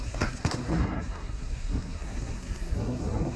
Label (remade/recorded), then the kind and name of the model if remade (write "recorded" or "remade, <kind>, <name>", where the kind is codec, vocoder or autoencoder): remade, codec, SNAC